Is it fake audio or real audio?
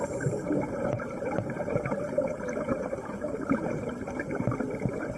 fake